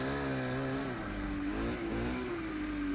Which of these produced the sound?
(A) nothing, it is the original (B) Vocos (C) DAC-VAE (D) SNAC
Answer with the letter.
A